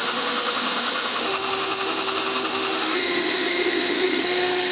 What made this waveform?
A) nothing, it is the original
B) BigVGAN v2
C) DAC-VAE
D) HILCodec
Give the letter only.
C